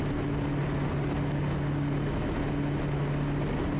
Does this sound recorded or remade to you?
recorded